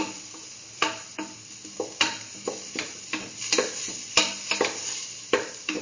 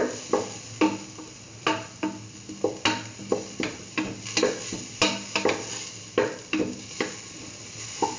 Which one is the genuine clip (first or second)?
second